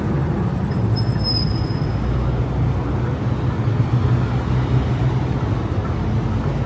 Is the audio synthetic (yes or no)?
no